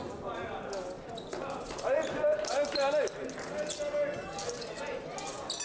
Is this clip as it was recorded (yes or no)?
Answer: yes